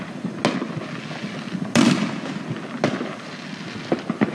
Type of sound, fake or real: real